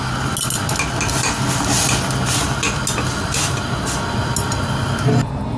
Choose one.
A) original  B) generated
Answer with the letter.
A